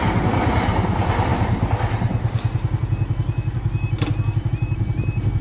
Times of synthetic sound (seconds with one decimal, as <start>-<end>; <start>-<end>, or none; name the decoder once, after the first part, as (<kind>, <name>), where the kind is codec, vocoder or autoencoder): none